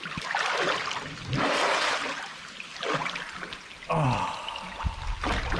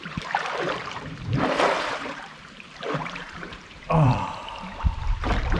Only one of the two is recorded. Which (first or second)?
first